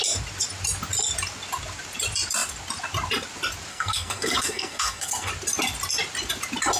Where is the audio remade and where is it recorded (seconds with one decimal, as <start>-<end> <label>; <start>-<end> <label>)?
0.0-3.7 recorded; 3.7-5.3 remade; 5.3-6.8 recorded